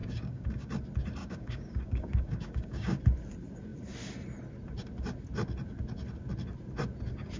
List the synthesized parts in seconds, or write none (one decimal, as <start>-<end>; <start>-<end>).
0.0-0.7; 1.2-3.0